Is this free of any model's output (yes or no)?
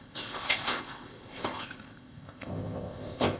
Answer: no